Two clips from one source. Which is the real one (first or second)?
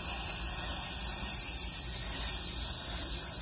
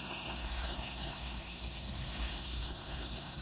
first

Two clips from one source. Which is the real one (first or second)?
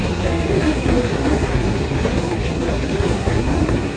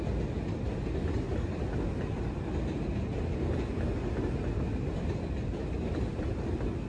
second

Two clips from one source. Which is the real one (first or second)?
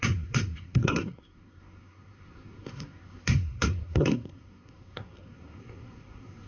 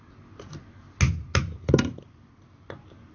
second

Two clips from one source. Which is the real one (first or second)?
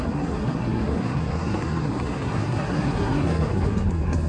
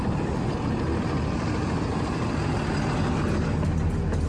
second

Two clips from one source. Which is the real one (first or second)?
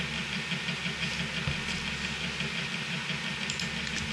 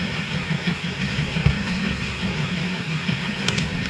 first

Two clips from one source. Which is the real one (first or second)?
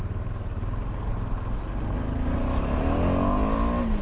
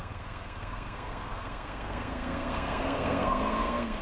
first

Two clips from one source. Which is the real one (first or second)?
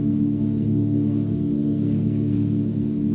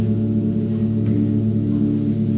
second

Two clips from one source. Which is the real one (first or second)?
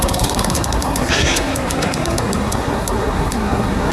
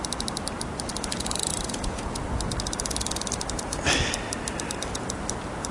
second